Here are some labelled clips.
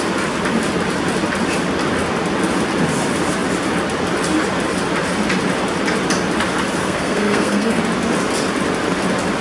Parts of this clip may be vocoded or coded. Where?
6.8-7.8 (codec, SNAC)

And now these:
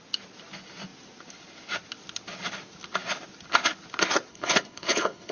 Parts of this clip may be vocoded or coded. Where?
4.3-5.3 (codec, HILCodec)

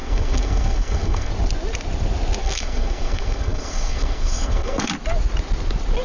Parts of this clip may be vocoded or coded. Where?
0.0-1.3 (codec, SNAC); 2.4-4.9

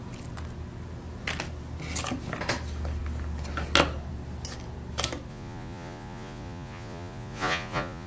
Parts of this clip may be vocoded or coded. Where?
5.3-8.1 (vocoder, Vocos)